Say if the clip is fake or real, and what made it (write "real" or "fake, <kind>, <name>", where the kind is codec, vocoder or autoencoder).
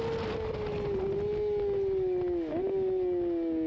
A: real